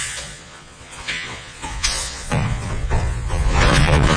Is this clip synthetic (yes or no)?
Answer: yes